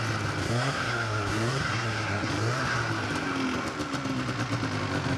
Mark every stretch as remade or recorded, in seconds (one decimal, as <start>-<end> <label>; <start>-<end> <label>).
0.0-0.4 recorded; 0.4-2.3 remade; 2.3-5.2 recorded